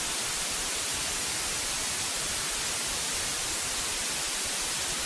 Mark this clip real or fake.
real